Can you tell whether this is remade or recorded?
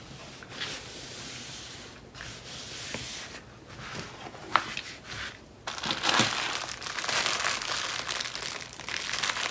recorded